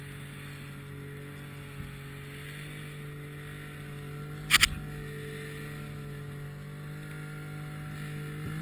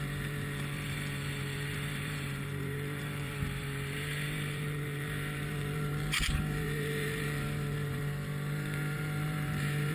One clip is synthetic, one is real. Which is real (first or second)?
first